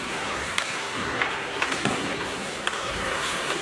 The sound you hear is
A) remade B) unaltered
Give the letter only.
A